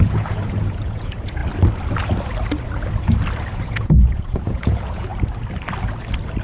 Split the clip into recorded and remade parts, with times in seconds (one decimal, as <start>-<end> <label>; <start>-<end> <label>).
0.0-1.4 remade; 1.4-3.5 recorded; 3.5-5.1 remade; 5.1-6.4 recorded